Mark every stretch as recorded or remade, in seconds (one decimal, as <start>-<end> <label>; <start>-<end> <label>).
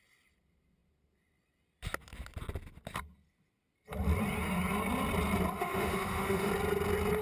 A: 0.0-5.6 recorded; 5.6-6.5 remade; 6.5-7.2 recorded